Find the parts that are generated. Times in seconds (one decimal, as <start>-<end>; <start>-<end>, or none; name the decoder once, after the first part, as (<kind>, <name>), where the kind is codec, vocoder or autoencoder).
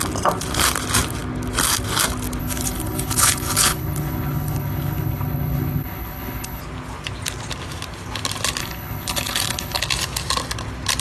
2.4-6.6 (codec, HILCodec); 8.6-9.8